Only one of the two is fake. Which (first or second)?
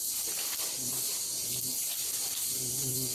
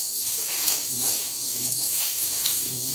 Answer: second